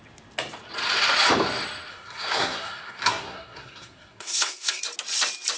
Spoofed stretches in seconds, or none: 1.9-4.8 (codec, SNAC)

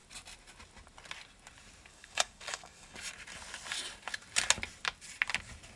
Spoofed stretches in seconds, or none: 1.9-3.1 (codec, DAC)

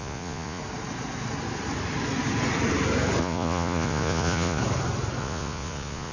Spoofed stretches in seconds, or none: 0.0-0.6 (vocoder, Vocos); 3.2-4.6; 5.2-6.1

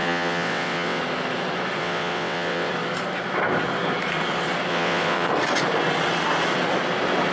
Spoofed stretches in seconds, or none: 0.0-1.0 (vocoder, WaveNeXt); 1.8-2.7; 4.7-5.3

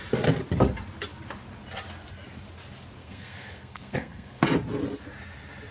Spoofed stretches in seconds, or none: 3.0-4.4 (codec, SNAC)